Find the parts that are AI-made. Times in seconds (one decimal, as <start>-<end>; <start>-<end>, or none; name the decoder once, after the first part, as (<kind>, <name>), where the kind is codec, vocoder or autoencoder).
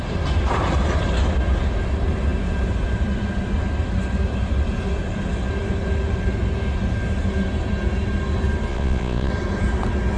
8.7-9.3 (vocoder, Vocos)